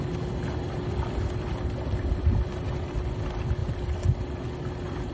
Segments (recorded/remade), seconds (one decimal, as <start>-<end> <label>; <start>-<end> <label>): 0.0-5.1 recorded